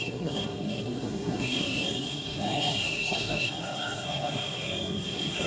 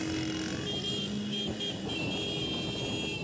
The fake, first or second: first